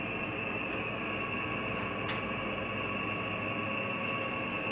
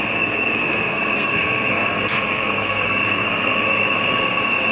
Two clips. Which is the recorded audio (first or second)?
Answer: first